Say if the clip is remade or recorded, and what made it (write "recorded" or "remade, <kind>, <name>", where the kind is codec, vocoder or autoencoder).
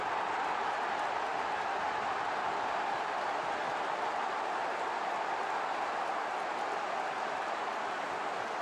recorded